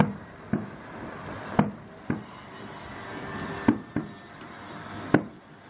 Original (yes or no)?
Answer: yes